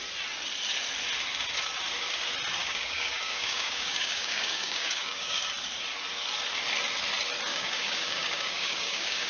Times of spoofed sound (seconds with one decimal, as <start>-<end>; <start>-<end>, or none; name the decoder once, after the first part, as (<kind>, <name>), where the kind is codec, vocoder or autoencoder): 2.6-5.4 (codec, DAC); 7.5-9.3